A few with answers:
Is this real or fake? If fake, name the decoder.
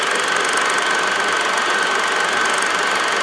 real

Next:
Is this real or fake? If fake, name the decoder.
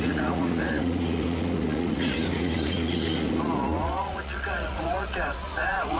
fake, vocoder, Vocos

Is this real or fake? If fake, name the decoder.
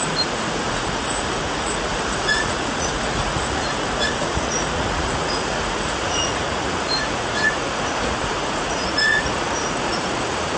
fake, vocoder, Vocos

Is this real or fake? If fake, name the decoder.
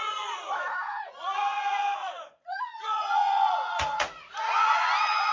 fake, vocoder, Vocos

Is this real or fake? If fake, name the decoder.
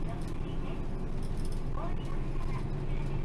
real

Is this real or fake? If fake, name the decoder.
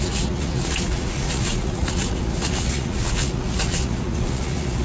fake, vocoder, Vocos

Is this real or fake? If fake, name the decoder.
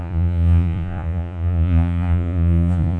fake, vocoder, Vocos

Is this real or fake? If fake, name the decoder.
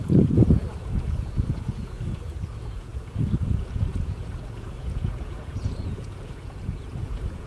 fake, vocoder, Vocos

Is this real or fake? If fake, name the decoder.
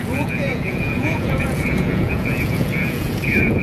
fake, vocoder, Vocos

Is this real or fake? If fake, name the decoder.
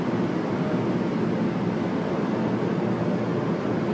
real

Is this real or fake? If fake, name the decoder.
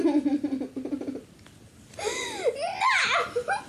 real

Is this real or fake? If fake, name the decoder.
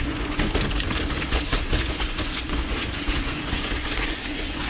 fake, vocoder, Vocos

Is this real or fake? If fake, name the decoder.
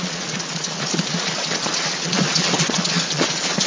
fake, vocoder, Vocos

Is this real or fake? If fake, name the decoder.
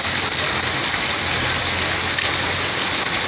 real